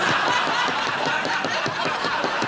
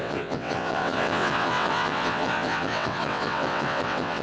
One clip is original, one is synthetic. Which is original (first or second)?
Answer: first